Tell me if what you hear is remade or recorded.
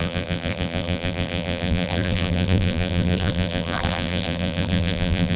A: remade